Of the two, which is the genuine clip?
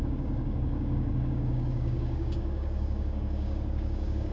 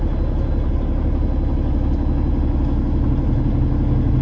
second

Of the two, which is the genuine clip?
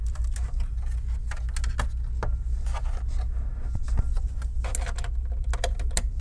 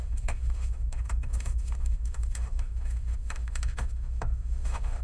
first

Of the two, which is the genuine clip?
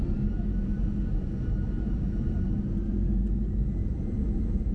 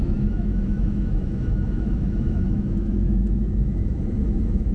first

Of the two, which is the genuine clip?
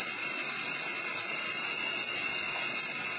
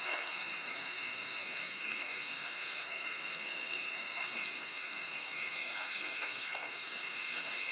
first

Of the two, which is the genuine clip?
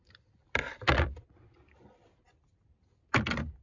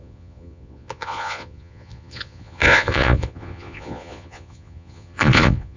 first